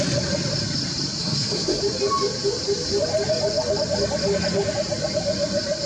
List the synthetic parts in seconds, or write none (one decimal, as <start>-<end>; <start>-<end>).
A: 1.2-1.8